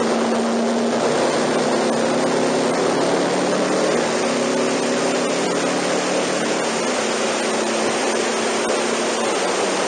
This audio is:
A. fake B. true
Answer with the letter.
B